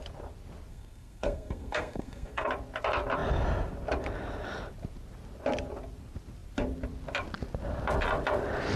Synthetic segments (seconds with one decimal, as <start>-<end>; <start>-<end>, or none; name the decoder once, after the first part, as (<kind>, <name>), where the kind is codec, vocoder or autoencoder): 0.7-2.5 (codec, SNAC)